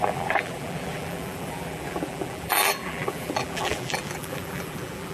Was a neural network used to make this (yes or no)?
yes